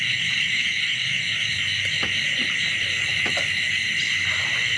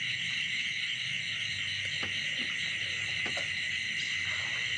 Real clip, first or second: second